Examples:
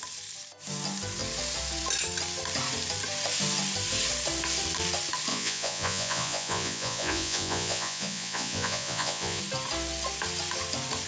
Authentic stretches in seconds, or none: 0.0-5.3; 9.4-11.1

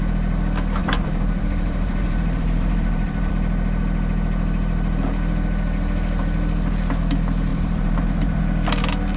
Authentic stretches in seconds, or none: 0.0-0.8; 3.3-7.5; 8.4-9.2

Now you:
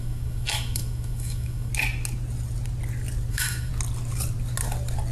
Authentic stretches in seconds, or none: 1.7-3.3; 3.7-5.1

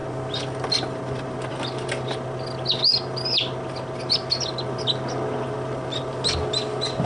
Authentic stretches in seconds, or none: 0.0-7.1

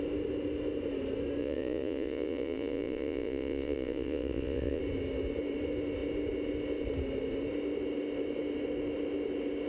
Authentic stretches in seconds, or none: 0.0-1.4; 4.8-9.7

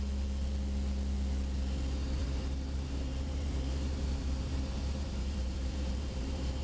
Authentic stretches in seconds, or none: 0.0-2.2

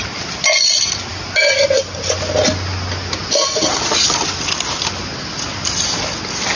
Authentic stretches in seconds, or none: 0.0-6.6